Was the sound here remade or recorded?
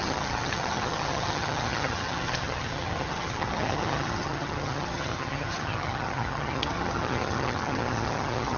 remade